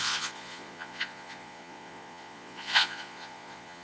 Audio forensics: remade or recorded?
remade